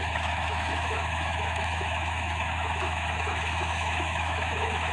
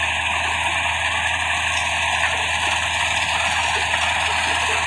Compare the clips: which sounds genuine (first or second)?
second